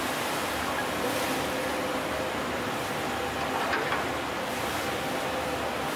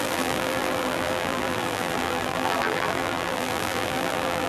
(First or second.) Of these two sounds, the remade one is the second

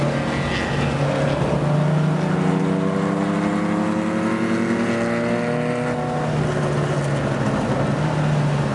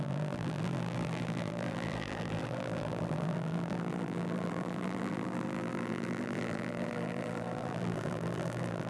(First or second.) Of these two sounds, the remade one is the second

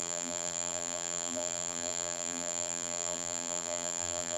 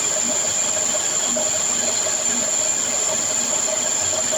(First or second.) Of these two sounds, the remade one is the first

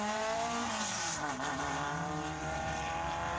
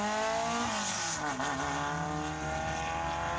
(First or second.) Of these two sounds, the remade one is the first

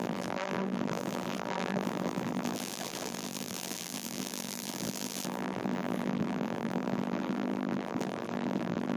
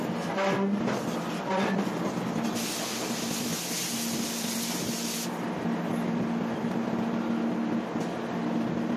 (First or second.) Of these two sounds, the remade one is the first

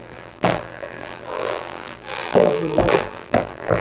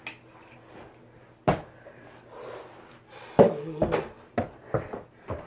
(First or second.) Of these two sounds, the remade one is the first